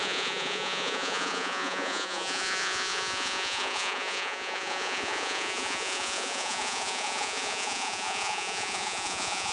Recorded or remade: remade